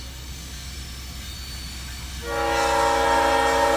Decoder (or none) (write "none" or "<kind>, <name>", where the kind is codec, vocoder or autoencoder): none